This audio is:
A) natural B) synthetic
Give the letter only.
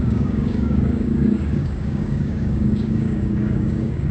B